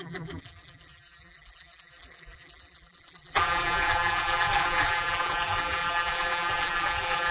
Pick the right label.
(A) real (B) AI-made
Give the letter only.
B